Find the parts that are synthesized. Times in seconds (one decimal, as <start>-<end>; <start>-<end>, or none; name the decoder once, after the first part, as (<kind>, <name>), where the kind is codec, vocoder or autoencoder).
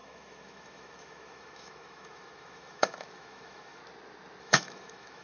0.0-3.8 (autoencoder, DAC-VAE); 4.4-5.2